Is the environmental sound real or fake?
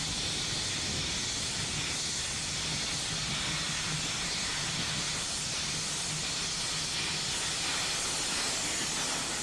real